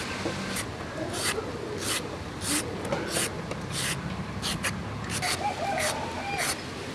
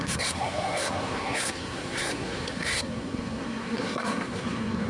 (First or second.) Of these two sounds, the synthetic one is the second